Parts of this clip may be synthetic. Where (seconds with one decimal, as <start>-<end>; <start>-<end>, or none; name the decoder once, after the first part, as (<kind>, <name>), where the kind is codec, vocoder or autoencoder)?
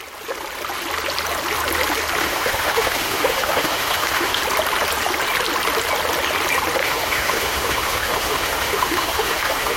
2.2-4.4 (autoencoder, DAC-VAE); 6.8-9.8